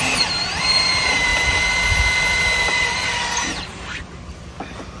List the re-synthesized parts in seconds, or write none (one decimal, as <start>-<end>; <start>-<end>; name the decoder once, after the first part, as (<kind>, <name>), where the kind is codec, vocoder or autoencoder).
none

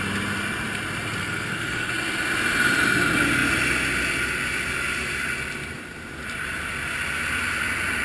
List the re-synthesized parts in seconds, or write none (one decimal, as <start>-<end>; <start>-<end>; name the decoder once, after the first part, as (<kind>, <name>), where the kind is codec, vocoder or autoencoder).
1.2-1.9 (codec, SNAC)

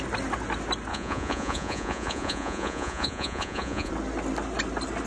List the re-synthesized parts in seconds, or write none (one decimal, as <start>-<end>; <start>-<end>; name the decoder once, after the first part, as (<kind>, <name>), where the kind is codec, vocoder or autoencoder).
0.9-3.9 (vocoder, Vocos)

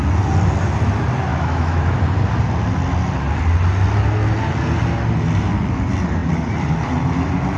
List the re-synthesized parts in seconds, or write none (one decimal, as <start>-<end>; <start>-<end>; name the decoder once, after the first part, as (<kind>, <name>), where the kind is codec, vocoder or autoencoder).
1.3-2.0 (autoencoder, DAC-VAE)

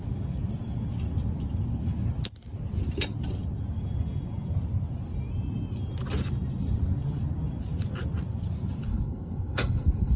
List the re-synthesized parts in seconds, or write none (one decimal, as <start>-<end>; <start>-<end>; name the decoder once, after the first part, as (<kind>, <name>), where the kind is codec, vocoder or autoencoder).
8.9-10.2 (codec, SNAC)

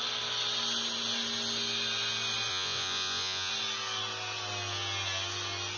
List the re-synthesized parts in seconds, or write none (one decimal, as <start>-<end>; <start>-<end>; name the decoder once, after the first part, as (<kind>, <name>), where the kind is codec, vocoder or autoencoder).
2.5-3.5 (vocoder, Vocos)